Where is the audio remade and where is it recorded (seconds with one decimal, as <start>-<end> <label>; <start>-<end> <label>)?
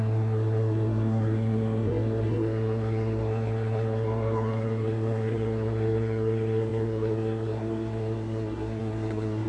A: 0.0-9.5 remade